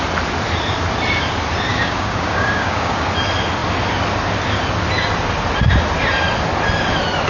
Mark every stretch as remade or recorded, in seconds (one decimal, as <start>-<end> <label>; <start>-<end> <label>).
0.0-1.7 recorded; 1.7-3.1 remade; 3.1-7.3 recorded

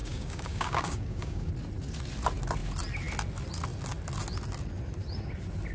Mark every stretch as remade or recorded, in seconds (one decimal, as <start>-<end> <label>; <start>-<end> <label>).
0.0-1.5 remade; 1.5-5.7 recorded

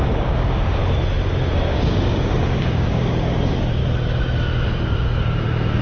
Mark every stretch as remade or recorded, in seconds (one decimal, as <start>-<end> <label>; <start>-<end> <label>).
0.0-0.8 remade; 0.8-1.7 recorded; 1.7-3.8 remade; 3.8-4.6 recorded; 4.6-5.8 remade